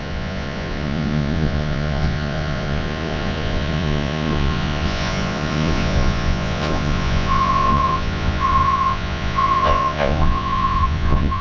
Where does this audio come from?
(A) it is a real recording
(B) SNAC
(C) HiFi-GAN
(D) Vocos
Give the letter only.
D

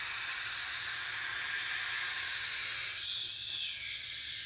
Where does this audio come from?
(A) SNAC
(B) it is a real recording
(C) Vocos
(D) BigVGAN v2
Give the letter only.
B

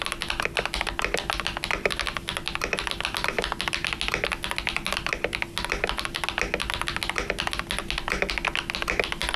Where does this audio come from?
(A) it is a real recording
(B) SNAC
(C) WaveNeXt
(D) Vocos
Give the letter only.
A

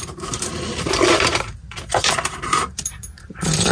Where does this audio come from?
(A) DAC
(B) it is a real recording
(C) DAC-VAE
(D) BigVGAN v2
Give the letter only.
D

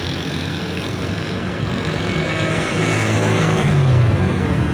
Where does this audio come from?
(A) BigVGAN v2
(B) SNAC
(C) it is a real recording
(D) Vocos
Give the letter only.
B